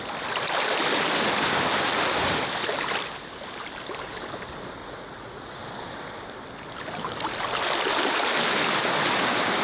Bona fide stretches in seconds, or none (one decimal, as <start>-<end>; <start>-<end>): 0.0-4.8; 5.6-9.6